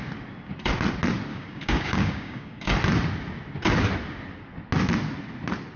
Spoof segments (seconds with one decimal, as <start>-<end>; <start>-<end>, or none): 1.3-2.7